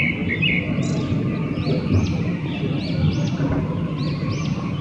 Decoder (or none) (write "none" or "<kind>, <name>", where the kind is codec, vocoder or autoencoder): none